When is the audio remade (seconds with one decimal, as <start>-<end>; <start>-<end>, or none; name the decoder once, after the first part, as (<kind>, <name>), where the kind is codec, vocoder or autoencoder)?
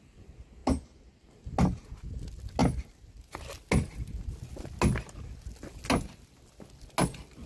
none